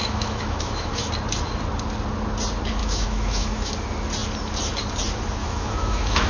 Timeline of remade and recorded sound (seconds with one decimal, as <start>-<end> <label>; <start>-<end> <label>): 0.0-1.1 remade; 1.1-2.8 recorded; 2.8-3.7 remade; 3.7-5.4 recorded; 5.4-6.3 remade